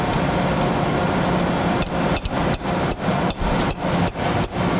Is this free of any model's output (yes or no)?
yes